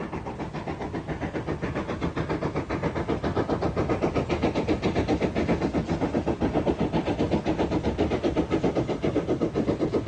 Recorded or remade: recorded